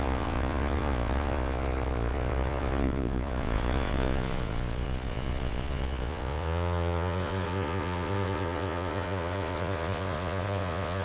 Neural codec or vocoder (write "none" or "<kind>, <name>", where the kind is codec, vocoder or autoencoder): vocoder, Vocos